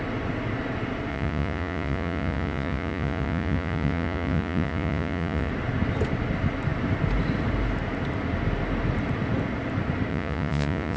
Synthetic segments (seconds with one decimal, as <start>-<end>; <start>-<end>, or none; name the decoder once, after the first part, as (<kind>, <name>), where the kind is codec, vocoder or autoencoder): 1.1-5.5 (vocoder, Vocos); 10.1-11.0